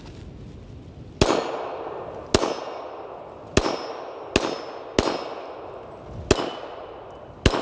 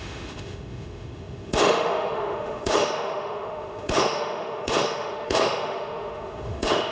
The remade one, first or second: second